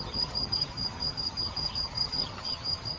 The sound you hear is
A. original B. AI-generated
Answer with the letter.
B